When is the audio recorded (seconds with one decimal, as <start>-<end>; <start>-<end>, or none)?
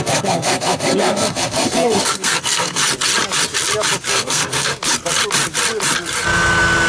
2.8-4.1; 4.7-6.9